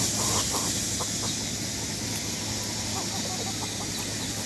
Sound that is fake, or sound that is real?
real